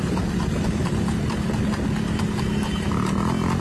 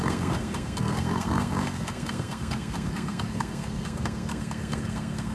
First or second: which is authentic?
first